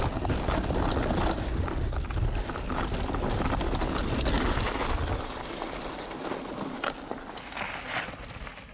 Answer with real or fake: real